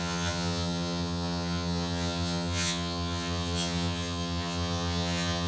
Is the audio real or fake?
fake